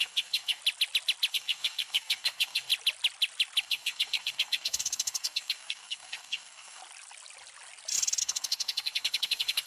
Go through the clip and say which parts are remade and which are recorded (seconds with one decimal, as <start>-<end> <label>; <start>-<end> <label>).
0.0-0.6 remade; 0.6-1.3 recorded; 1.3-2.7 remade; 2.7-3.6 recorded; 3.6-6.8 remade; 6.8-8.2 recorded; 8.2-9.7 remade